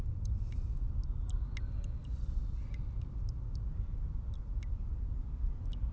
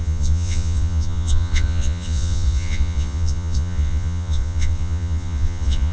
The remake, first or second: second